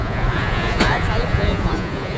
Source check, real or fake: fake